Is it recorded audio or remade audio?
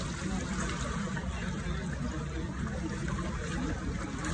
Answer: recorded